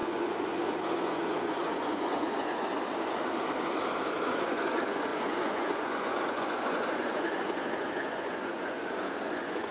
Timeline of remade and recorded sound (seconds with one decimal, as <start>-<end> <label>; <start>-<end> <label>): 0.0-2.7 remade; 2.7-4.3 recorded; 4.3-9.7 remade